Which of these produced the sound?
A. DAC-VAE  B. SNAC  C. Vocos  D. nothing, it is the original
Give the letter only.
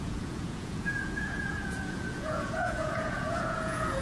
C